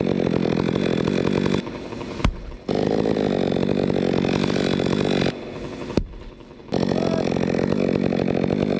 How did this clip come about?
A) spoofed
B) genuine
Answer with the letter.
A